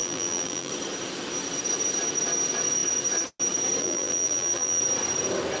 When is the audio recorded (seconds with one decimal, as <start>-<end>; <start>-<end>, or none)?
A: 0.7-3.8; 4.8-5.6